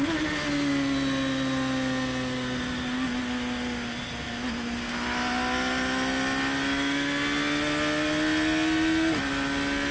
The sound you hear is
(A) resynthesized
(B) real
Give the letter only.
B